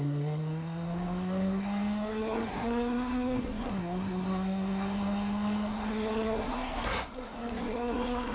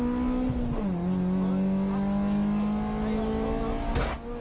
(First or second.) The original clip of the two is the second